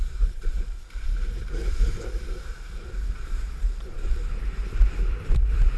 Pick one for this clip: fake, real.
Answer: fake